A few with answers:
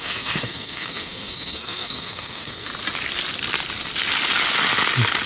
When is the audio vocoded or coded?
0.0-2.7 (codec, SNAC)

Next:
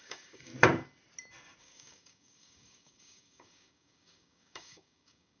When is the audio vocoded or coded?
0.0-0.5 (codec, DAC); 1.6-5.4